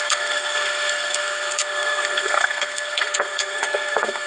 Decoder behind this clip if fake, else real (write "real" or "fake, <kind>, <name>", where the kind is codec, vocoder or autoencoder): fake, codec, SNAC